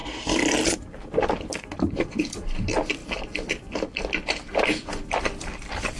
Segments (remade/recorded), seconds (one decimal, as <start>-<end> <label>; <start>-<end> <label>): 0.0-0.8 recorded; 0.8-6.0 remade